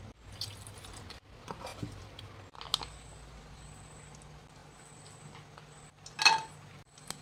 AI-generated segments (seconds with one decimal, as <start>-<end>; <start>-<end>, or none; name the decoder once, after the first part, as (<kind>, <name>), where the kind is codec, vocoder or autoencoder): none